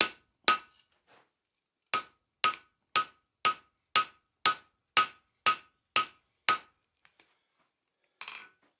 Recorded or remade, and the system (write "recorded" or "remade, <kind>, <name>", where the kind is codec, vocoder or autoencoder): recorded